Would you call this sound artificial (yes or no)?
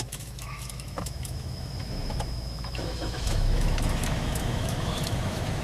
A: yes